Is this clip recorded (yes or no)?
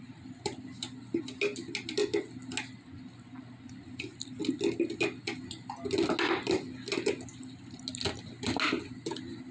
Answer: yes